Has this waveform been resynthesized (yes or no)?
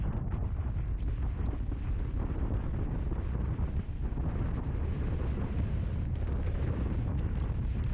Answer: no